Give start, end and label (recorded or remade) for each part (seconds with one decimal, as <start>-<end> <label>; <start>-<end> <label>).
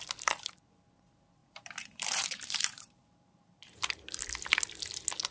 0.0-1.4 recorded; 1.4-4.2 remade; 4.2-5.3 recorded